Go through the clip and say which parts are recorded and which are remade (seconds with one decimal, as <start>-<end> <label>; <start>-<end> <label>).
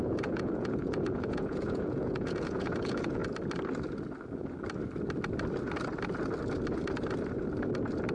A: 0.0-3.2 remade; 3.2-8.1 recorded